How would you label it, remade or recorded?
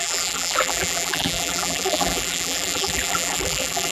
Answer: remade